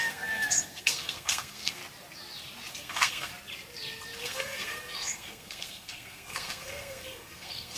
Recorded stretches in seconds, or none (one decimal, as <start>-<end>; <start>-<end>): 1.8-2.7; 3.3-4.2